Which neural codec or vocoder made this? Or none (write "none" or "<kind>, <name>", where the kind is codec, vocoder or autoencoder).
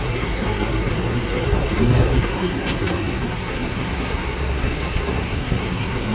codec, SNAC